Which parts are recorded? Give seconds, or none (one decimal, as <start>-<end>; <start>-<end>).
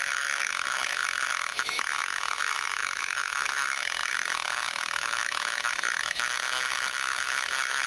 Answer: none